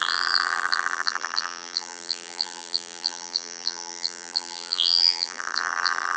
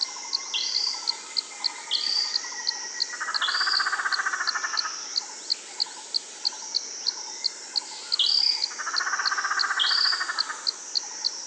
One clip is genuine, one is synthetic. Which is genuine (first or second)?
second